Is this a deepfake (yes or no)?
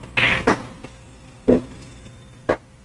no